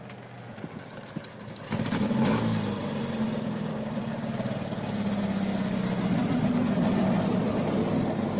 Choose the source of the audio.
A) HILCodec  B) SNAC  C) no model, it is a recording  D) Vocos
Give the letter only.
C